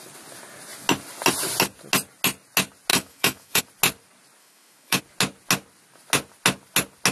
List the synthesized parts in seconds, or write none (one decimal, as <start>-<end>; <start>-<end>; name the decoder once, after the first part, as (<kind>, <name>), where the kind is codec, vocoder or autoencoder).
2.9-3.6 (autoencoder, DAC-VAE); 4.4-5.0